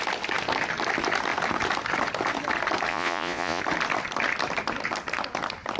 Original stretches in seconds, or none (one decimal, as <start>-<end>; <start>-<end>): 0.0-2.9; 3.6-5.8